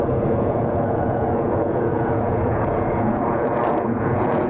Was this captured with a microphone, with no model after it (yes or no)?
no